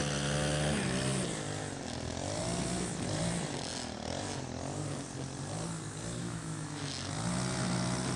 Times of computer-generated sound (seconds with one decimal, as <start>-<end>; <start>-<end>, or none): 6.2-6.9

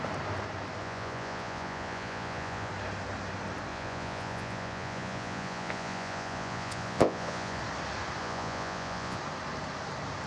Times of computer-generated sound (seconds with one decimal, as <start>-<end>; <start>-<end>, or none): 0.8-2.7; 3.7-7.6; 8.2-9.2

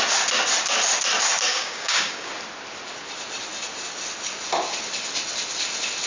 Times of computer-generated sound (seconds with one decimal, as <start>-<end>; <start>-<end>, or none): 1.5-2.3

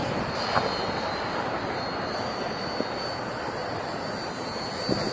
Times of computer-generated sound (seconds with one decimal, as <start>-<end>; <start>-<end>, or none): none

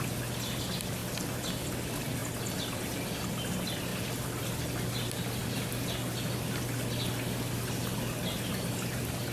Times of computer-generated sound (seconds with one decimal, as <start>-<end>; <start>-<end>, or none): none